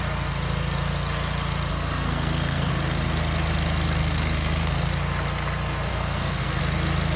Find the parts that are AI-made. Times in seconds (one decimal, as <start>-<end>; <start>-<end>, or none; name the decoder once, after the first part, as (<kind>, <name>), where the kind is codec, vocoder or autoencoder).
1.7-2.7 (codec, SNAC); 4.0-4.9; 5.9-6.6